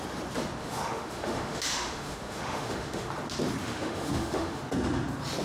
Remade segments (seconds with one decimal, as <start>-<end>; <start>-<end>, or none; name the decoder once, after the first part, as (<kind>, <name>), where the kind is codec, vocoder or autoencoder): 0.6-3.1 (autoencoder, DAC-VAE); 3.6-4.6

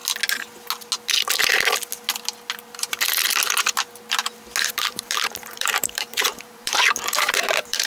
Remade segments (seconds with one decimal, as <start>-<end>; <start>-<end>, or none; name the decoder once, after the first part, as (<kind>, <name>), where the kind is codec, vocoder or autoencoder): 4.7-7.9 (vocoder, BigVGAN v2)

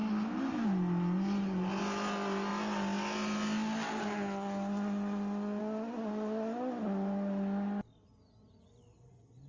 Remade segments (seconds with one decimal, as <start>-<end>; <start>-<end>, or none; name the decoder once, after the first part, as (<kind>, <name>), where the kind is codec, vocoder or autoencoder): none

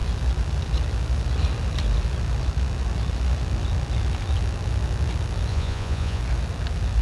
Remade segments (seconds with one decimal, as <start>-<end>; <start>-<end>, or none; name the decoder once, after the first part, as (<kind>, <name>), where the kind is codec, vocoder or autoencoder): 5.5-6.2 (vocoder, Vocos)

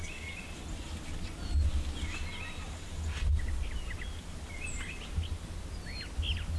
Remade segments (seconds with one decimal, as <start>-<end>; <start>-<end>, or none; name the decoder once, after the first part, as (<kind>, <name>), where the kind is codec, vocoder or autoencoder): none

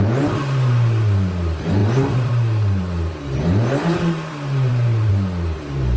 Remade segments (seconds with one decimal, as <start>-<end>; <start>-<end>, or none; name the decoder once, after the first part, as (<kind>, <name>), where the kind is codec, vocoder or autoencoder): 0.0-6.0 (vocoder, BigVGAN v2)